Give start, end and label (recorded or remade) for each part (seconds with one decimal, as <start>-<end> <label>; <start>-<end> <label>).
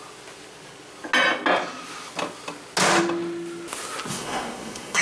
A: 0.0-4.1 recorded; 4.1-5.0 remade